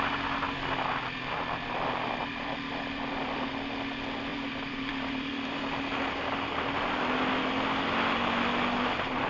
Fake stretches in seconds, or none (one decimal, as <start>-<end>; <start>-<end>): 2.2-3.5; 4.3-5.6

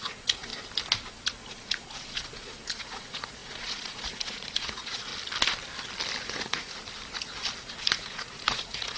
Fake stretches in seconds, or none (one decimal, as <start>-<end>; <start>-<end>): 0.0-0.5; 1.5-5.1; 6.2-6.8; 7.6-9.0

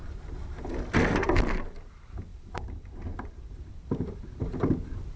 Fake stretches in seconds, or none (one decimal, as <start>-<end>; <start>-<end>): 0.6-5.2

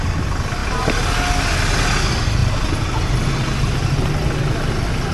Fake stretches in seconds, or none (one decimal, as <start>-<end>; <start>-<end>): none